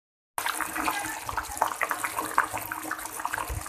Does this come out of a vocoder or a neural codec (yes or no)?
no